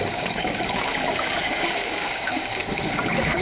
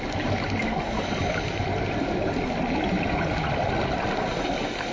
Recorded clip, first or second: second